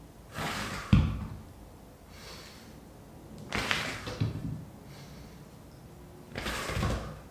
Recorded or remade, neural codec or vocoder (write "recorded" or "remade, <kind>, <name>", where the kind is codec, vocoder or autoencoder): recorded